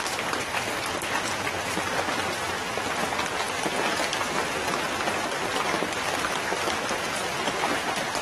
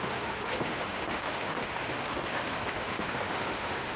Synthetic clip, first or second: second